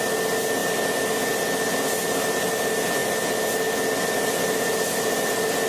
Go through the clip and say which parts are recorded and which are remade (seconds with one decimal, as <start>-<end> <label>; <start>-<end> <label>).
0.0-5.7 recorded